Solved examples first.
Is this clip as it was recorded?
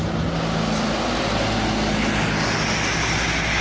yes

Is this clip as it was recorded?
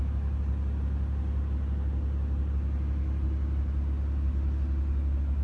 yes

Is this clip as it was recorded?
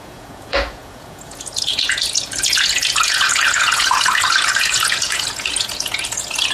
no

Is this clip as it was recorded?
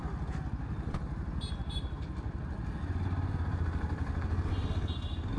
yes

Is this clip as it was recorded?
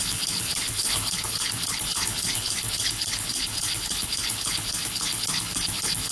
no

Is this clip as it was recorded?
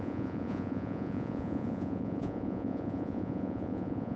no